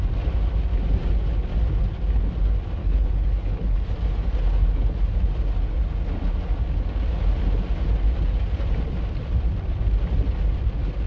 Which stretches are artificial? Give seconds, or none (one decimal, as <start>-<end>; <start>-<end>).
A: 2.8-3.8